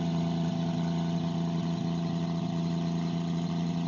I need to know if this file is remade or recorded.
recorded